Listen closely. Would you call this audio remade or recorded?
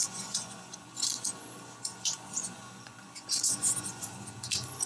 remade